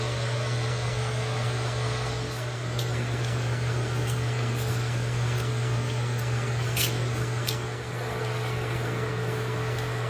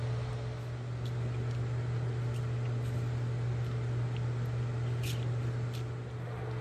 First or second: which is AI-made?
first